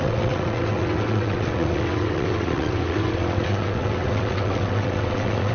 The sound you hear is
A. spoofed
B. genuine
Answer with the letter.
A